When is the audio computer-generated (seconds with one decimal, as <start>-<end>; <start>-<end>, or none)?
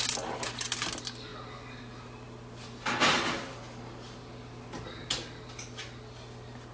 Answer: none